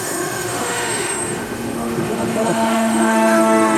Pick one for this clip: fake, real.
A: fake